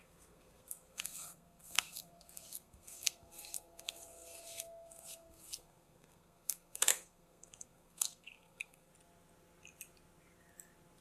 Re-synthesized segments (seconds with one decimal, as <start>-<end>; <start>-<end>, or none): 0.0-8.9